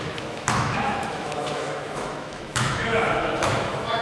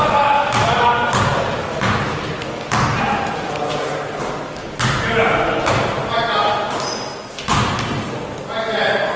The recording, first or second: second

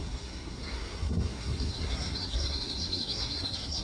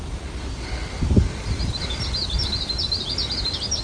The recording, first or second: second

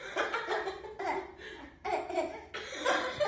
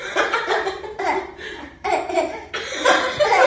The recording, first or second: first